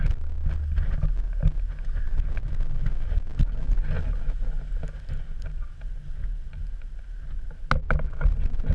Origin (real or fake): real